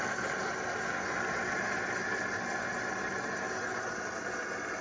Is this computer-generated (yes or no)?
no